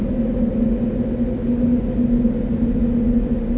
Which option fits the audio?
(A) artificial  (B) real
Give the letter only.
B